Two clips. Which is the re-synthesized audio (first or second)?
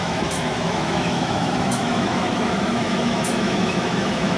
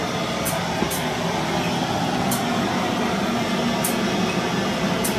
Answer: first